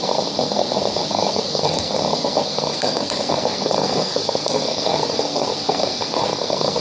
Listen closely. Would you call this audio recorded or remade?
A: remade